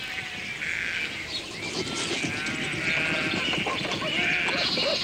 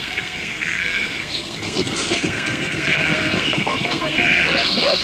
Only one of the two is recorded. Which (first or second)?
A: first